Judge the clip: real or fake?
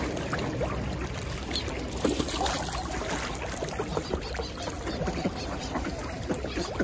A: real